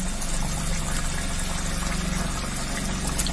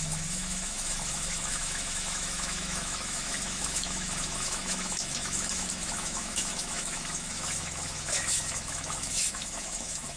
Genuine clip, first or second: first